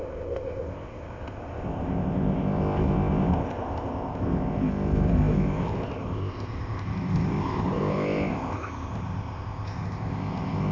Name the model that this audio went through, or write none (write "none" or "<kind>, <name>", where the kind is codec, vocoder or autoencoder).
codec, ZipCodec